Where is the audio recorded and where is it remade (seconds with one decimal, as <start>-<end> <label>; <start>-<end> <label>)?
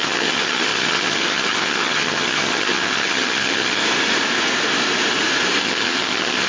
0.0-3.8 remade; 3.8-5.6 recorded; 5.6-6.5 remade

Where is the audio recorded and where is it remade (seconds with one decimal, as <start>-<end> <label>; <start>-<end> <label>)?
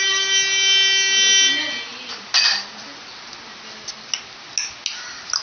0.0-5.4 recorded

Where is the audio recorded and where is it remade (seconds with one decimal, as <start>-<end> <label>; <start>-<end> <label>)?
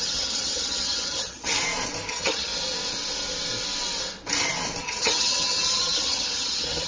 0.0-1.5 remade; 1.5-2.1 recorded; 2.1-2.5 remade; 2.5-4.8 recorded; 4.8-6.9 remade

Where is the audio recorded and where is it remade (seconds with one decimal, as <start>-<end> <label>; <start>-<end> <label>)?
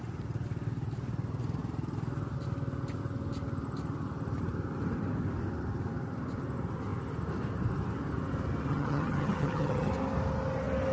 0.0-8.7 recorded; 8.7-9.9 remade; 9.9-10.9 recorded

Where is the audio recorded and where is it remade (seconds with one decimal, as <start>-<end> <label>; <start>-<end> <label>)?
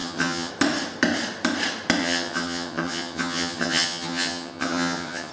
0.0-0.5 remade; 0.5-2.0 recorded; 2.0-5.3 remade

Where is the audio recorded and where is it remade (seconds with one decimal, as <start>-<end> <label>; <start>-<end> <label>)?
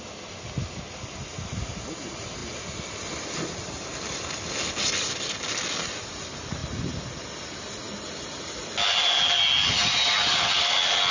0.0-11.1 recorded